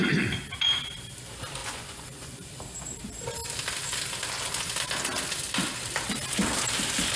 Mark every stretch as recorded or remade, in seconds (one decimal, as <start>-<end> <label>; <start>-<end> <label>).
0.0-1.6 recorded; 1.6-2.5 remade; 2.5-7.2 recorded

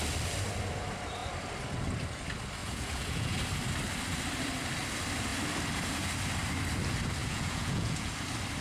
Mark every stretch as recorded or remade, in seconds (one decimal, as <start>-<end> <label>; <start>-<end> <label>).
0.0-2.6 recorded; 2.6-3.4 remade; 3.4-7.2 recorded; 7.2-8.1 remade; 8.1-8.6 recorded

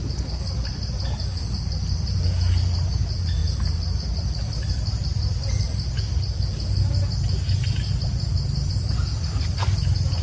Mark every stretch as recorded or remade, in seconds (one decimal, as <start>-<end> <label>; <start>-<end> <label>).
0.0-10.2 recorded